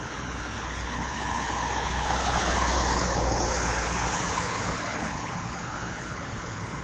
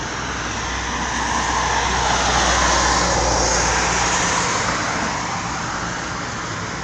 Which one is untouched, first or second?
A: second